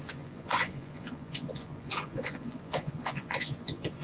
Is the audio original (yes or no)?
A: no